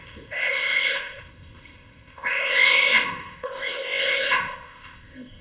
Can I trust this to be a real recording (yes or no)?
no